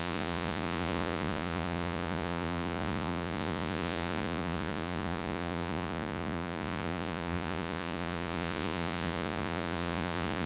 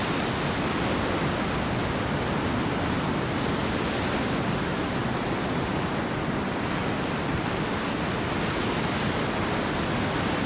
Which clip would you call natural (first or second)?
second